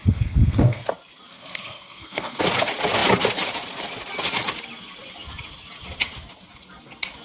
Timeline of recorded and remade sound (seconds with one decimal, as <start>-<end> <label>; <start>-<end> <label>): 0.0-0.8 remade; 0.8-1.3 recorded; 1.3-2.4 remade; 2.4-7.2 recorded